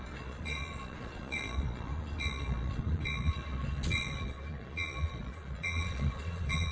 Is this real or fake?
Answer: fake